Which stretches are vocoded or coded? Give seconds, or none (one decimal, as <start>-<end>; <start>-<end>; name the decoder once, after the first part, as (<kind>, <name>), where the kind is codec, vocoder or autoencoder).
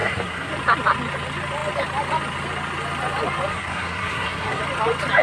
0.0-0.5 (codec, SNAC); 3.5-4.6